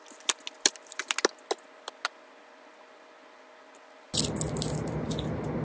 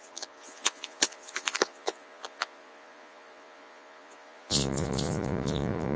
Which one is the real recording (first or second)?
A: first